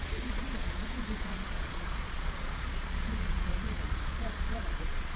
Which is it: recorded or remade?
remade